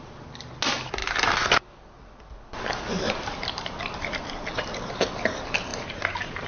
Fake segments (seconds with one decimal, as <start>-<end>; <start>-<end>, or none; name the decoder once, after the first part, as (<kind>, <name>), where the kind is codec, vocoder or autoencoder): 5.7-6.5 (vocoder, BigVGAN v2)